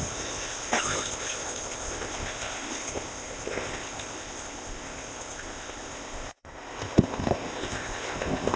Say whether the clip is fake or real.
fake